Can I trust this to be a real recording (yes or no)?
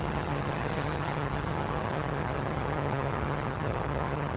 no